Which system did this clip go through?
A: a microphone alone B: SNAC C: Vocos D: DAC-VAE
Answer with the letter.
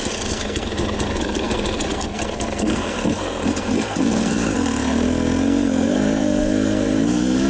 B